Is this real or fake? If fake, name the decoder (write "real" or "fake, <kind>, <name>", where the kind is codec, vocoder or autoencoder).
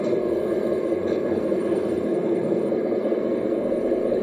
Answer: fake, codec, SNAC